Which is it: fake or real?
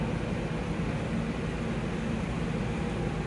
real